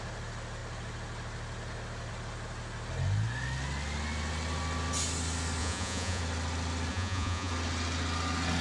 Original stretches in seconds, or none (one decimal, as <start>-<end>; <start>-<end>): 0.0-5.6; 6.2-6.9; 7.5-8.6